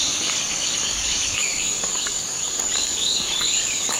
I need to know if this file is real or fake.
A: fake